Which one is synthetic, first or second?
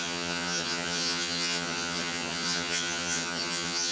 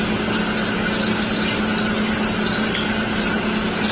first